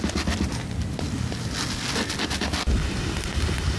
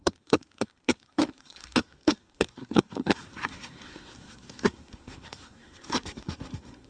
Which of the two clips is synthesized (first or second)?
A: second